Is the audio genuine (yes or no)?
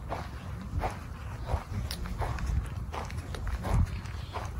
yes